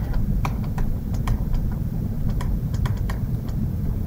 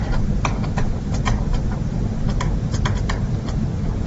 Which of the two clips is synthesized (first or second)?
first